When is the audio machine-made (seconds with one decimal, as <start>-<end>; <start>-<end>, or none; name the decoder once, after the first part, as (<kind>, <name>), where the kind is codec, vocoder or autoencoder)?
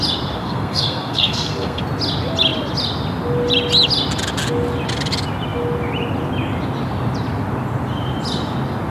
0.4-1.8 (codec, SNAC)